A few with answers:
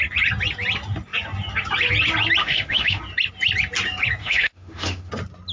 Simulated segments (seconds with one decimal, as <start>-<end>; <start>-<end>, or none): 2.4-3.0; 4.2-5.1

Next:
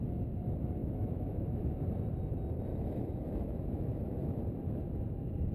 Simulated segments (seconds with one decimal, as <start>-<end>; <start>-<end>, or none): 0.8-1.8; 2.7-4.4

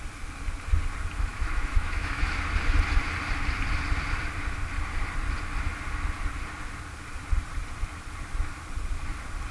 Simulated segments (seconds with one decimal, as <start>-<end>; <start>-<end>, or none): 1.3-2.3

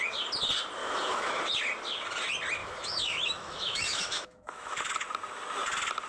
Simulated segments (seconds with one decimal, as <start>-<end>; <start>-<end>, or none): 0.8-1.4; 2.6-4.8